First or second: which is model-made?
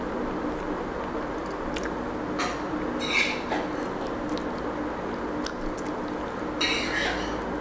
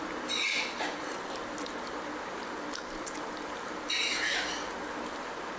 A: second